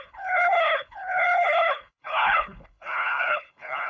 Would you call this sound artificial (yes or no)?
yes